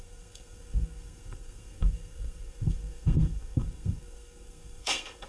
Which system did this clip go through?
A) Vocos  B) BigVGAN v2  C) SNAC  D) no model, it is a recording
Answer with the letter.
C